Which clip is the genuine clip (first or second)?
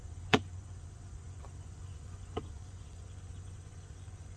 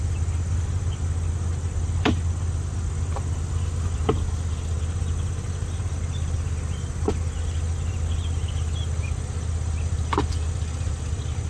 second